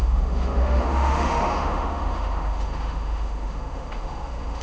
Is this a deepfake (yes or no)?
yes